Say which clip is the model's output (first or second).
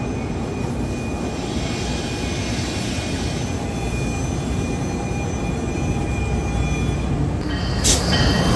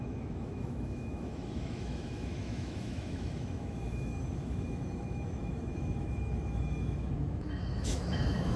second